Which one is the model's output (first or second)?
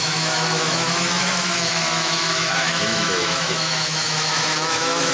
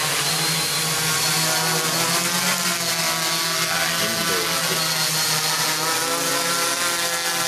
first